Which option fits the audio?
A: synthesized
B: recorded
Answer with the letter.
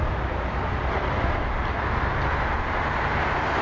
B